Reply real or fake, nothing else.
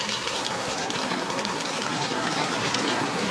fake